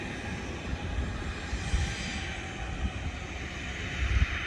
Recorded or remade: recorded